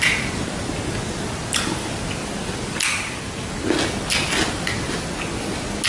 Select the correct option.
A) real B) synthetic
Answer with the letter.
A